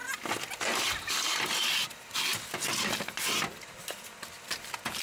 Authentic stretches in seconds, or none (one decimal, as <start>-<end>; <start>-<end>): 0.0-5.0